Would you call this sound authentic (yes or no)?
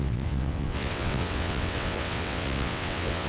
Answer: no